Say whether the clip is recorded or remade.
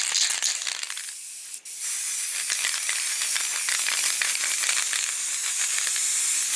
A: recorded